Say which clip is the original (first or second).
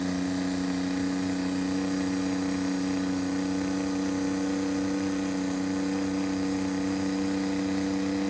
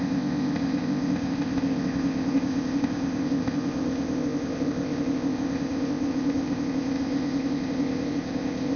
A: first